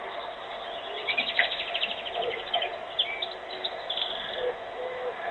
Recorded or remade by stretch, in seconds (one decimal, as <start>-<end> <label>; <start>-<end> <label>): 0.0-5.3 recorded